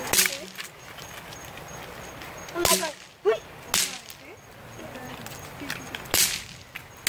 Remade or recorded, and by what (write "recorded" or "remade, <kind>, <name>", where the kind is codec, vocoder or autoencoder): recorded